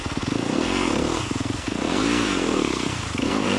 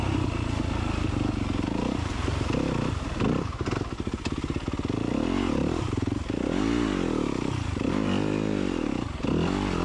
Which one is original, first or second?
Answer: second